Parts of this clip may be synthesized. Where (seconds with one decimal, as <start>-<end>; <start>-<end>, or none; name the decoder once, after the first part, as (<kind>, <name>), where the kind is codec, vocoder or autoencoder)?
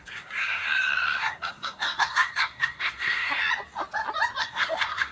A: 0.0-3.4 (codec, SNAC); 4.4-5.1